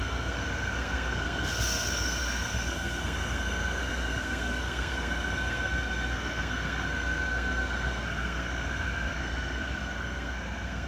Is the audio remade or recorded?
remade